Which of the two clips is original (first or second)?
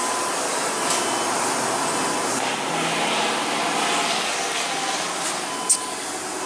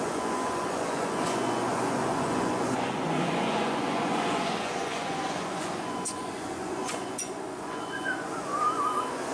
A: first